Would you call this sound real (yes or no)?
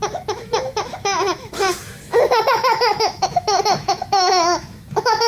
no